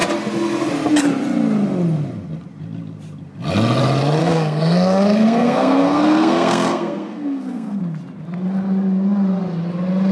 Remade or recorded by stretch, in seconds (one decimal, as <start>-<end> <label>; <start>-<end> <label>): 0.0-4.2 recorded; 4.2-7.8 remade; 7.8-10.1 recorded